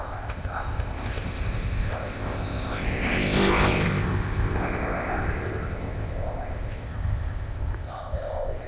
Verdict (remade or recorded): remade